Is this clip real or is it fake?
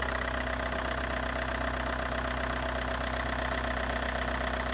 real